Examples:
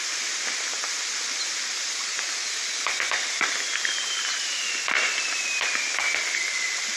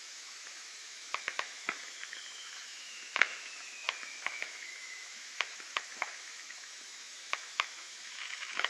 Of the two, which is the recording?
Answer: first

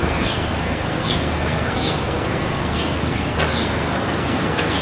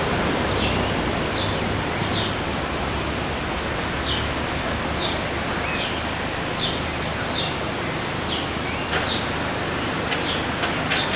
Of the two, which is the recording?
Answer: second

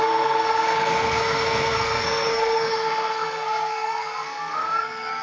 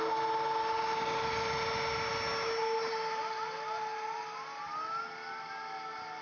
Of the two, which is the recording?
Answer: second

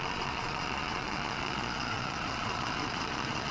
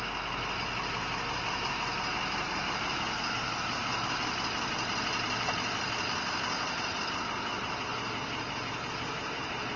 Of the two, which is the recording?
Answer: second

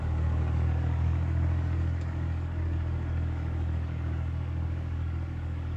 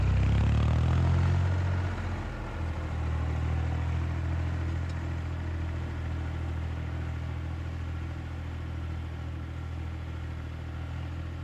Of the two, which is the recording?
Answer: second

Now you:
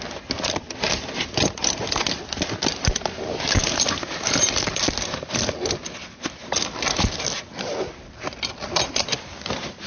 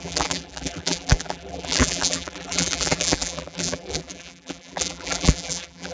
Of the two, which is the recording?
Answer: first